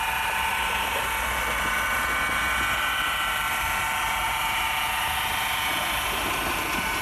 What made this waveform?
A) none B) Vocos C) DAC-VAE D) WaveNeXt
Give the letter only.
A